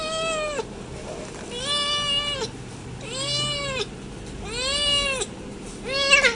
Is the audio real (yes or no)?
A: yes